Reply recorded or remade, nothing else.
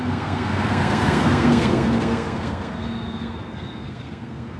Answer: remade